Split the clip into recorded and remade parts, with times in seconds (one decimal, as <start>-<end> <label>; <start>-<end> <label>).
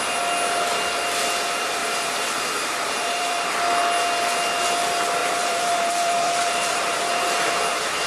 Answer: 0.0-1.8 recorded; 1.8-3.5 remade; 3.5-5.2 recorded; 5.2-7.5 remade; 7.5-8.1 recorded